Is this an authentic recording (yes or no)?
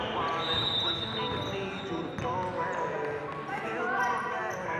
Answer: yes